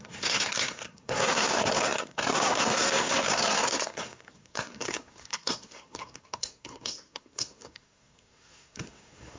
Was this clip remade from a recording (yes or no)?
yes